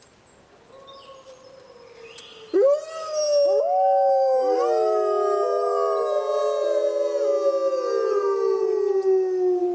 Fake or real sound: real